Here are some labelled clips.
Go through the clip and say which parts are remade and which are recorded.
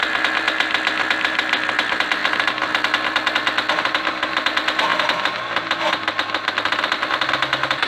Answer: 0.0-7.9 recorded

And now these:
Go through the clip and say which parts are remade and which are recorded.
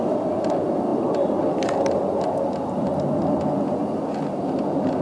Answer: 0.0-5.0 recorded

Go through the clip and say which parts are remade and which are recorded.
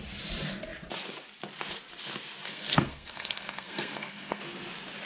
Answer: 0.0-2.5 recorded; 2.5-4.4 remade; 4.4-5.1 recorded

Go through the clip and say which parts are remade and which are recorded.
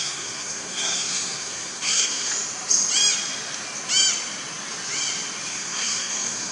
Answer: 0.0-2.3 remade; 2.3-5.5 recorded; 5.5-6.5 remade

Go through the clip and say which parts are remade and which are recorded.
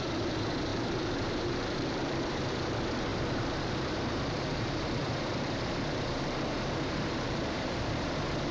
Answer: 0.0-8.5 remade